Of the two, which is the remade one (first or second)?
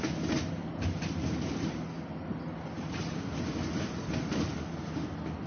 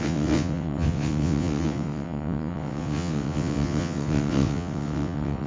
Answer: second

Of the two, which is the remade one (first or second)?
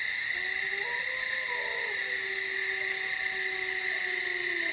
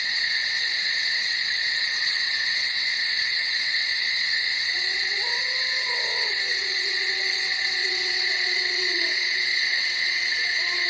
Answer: second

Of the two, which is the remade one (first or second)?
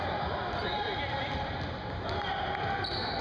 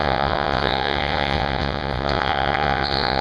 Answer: second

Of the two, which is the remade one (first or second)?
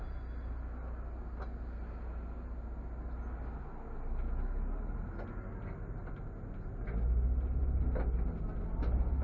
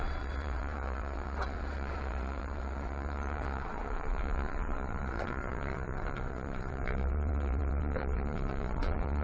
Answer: second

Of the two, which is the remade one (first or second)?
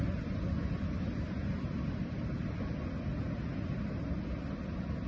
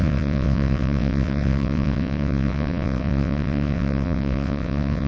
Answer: second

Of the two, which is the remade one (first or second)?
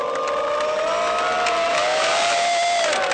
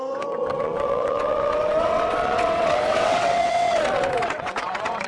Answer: second